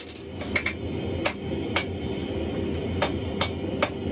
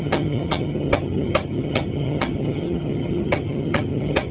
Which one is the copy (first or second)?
second